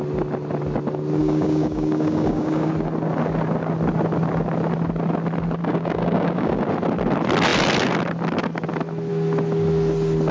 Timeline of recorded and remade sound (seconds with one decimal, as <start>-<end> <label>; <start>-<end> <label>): 0.0-1.2 recorded; 1.2-2.7 remade; 2.7-5.6 recorded; 5.6-6.6 remade; 6.6-10.3 recorded